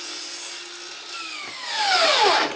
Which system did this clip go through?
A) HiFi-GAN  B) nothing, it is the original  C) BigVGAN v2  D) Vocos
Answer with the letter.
B